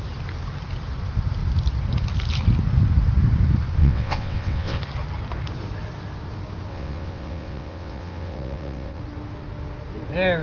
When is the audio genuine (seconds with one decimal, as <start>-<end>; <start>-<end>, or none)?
0.0-3.8; 4.8-6.7; 9.0-10.4